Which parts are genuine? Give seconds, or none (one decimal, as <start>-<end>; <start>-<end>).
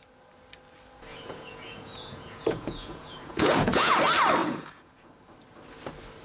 0.0-1.1; 4.0-4.4; 5.1-6.2